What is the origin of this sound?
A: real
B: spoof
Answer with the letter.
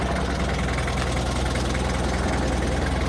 A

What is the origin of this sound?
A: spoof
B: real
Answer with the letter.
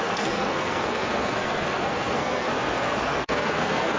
A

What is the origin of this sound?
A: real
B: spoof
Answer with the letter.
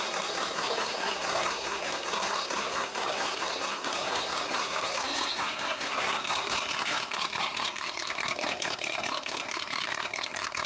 B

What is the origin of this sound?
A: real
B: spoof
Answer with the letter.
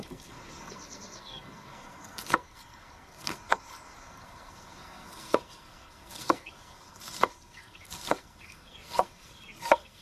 B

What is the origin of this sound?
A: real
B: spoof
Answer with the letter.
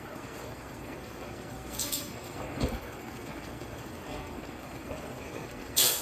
B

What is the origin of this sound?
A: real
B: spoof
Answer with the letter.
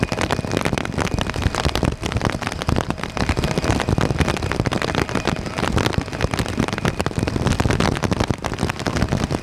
A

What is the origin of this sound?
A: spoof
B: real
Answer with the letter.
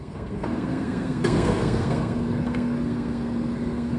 A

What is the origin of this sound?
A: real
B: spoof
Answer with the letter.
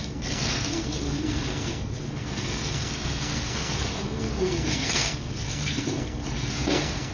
B